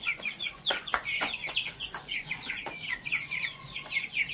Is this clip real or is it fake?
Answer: fake